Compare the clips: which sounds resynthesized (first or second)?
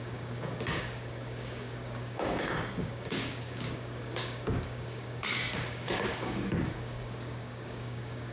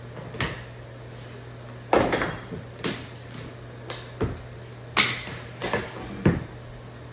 first